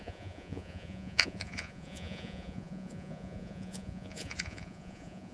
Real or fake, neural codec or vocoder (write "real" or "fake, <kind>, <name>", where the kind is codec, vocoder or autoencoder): fake, vocoder, Vocos